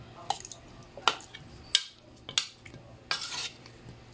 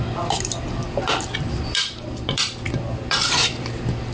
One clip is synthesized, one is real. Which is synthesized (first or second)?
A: second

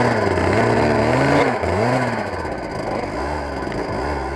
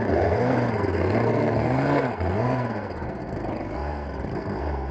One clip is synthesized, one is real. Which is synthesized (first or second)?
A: second